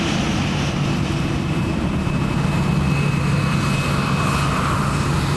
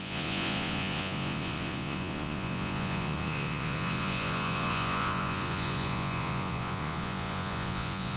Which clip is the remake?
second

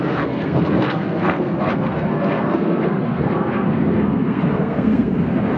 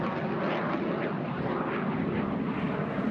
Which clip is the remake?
first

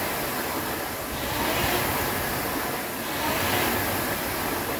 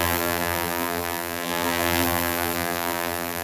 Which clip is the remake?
second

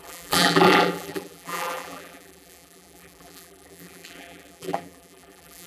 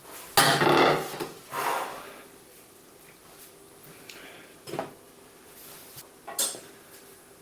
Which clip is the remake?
first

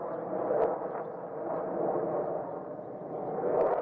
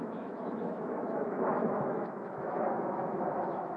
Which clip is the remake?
second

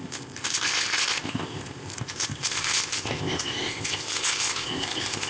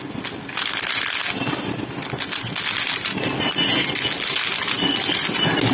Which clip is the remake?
first